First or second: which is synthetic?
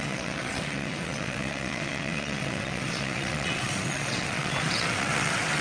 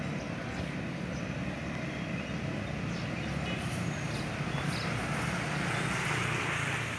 first